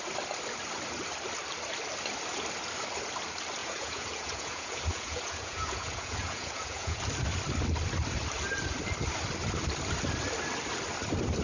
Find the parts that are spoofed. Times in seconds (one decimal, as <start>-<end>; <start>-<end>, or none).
3.6-7.0